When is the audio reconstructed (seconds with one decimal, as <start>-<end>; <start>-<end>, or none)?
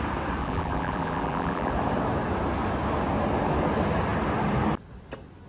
0.4-1.7